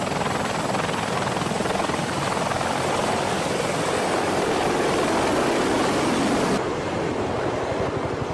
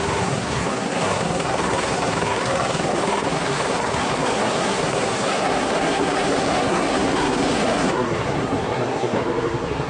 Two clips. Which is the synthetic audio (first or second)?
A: second